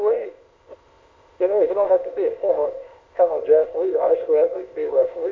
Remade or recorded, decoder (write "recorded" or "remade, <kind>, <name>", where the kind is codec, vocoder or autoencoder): remade, codec, ZipCodec